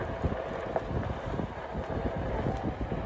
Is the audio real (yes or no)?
yes